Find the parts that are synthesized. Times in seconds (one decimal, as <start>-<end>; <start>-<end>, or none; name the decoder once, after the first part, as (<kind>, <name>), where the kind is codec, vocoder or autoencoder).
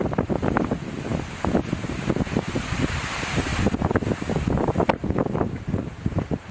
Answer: 3.5-5.7 (vocoder, BigVGAN v2)